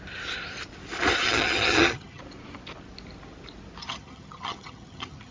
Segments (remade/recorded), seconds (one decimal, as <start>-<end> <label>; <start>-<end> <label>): 0.0-1.2 recorded; 1.2-2.2 remade; 2.2-3.8 recorded; 3.8-5.3 remade